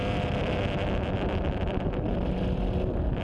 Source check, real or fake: fake